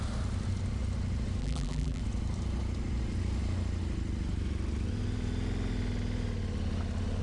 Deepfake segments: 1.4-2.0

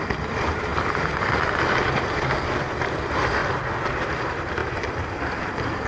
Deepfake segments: 0.0-3.4; 4.0-4.6; 5.4-5.9